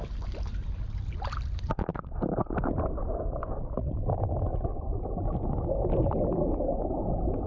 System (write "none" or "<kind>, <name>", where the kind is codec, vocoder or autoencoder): vocoder, BigVGAN v2